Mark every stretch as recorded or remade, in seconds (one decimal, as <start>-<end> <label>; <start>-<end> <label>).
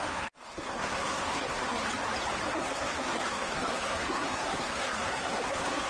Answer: 0.0-1.8 remade; 1.8-2.5 recorded; 2.5-5.9 remade